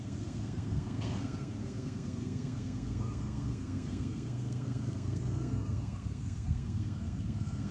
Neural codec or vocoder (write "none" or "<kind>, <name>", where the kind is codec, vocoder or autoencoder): codec, SNAC